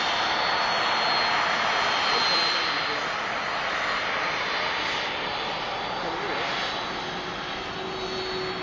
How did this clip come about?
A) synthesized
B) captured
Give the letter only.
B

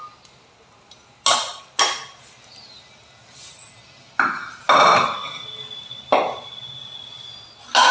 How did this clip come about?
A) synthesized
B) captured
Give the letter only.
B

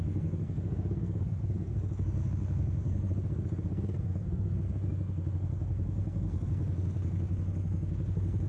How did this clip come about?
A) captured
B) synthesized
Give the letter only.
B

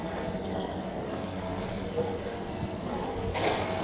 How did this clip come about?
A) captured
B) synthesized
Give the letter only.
B